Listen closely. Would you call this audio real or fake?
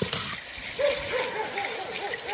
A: real